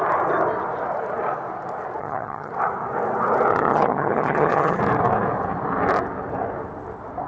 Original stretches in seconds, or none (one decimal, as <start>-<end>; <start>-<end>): 0.0-2.0; 2.5-3.5; 4.8-7.3